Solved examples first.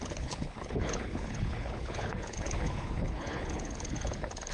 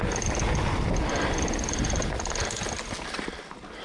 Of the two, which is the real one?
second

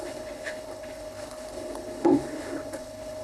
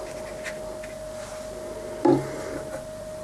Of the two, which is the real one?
second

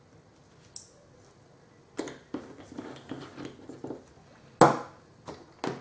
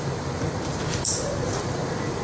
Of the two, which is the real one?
first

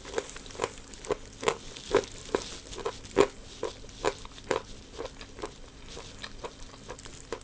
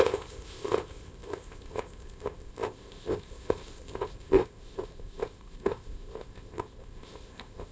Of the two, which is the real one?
first